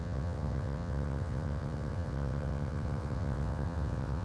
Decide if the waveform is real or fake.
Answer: fake